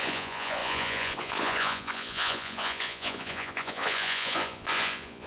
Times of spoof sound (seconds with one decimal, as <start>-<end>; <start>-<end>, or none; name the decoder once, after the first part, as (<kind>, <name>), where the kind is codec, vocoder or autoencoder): 0.0-5.3 (vocoder, Vocos)